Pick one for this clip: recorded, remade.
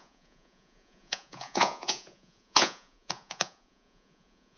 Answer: remade